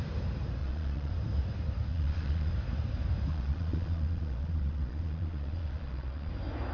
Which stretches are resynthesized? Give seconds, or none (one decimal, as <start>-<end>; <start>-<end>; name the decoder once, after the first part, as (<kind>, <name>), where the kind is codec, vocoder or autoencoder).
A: 0.6-1.1 (vocoder, Vocos); 1.9-2.5; 3.3-6.3